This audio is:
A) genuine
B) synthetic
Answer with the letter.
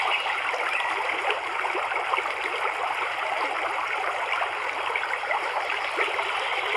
A